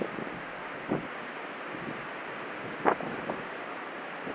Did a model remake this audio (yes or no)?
no